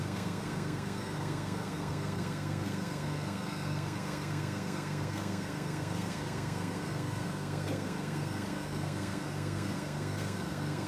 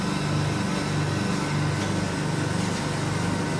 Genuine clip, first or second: second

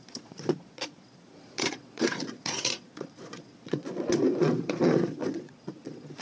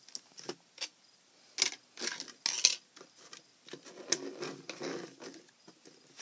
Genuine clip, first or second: second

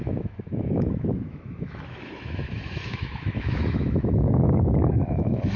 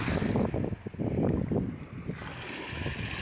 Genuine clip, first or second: second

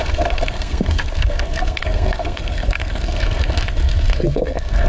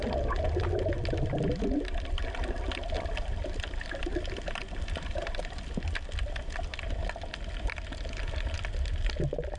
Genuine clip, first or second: second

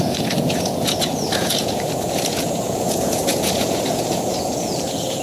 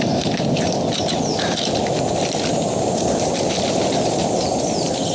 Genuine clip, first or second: second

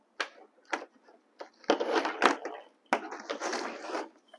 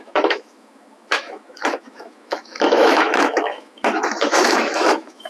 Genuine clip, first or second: first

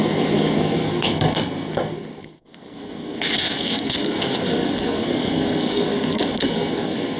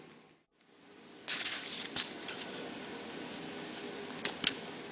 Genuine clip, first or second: second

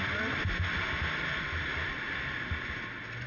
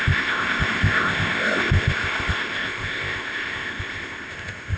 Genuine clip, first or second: first